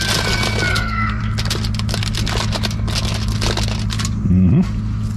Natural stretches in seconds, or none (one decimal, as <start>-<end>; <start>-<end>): 0.0-0.7; 1.2-5.2